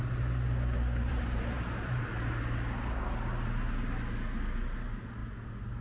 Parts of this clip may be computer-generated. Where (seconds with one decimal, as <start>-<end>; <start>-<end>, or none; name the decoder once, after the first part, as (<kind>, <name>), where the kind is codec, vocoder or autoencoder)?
1.1-2.3 (vocoder, BigVGAN v2)